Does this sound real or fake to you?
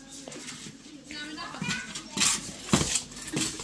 real